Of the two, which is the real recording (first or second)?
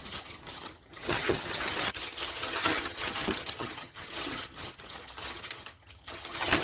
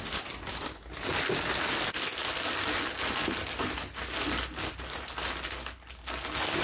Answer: second